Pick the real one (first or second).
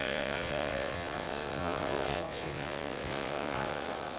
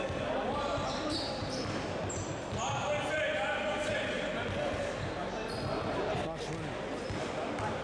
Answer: second